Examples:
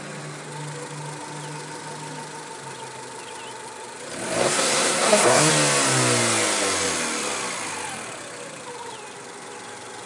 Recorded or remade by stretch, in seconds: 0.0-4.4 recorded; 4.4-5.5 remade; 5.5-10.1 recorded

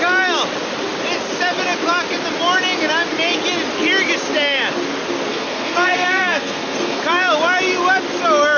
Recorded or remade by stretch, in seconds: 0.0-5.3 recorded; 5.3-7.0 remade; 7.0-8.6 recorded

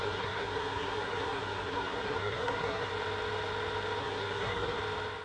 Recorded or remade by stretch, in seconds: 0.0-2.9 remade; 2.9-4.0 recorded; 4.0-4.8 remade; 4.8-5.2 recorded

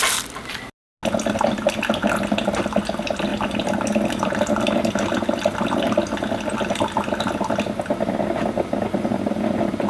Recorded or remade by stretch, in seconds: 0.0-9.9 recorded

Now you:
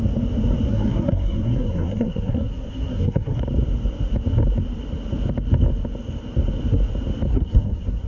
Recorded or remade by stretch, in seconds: 0.0-0.7 recorded; 0.7-3.4 remade; 3.4-7.3 recorded; 7.3-8.1 remade